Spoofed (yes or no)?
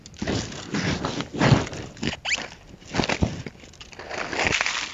no